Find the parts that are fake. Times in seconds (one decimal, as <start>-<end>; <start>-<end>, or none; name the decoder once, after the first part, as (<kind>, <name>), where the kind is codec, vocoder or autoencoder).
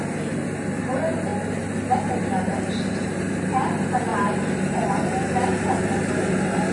none